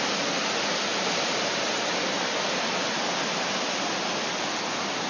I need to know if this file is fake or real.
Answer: real